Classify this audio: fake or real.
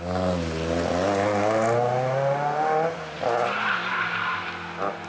real